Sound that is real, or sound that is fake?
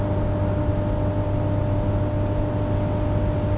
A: real